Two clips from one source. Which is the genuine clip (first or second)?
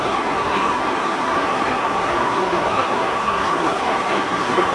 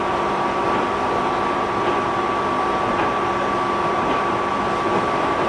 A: second